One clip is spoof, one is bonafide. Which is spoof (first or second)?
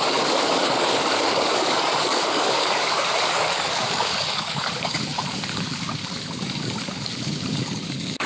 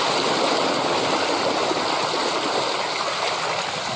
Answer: first